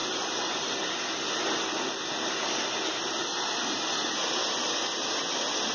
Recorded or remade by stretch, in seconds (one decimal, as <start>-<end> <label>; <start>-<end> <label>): 0.0-5.7 recorded